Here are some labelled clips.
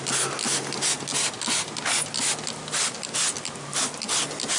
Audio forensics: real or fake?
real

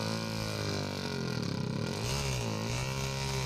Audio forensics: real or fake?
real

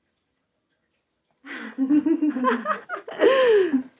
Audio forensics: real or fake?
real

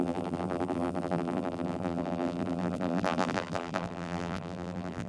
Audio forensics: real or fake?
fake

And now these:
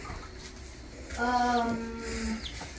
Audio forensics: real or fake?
real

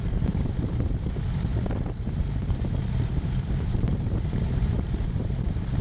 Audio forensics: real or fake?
fake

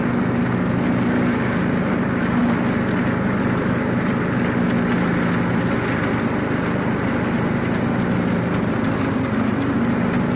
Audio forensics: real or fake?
real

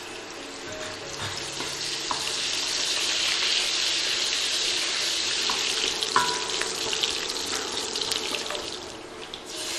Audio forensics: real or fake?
real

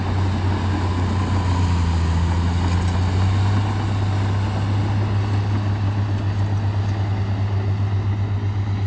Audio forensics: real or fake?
real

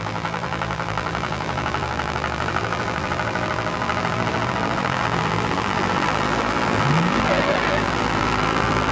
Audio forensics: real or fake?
fake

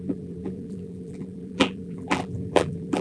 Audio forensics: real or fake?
fake